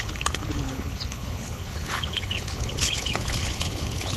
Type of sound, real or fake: fake